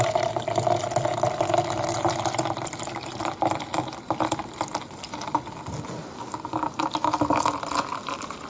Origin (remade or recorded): recorded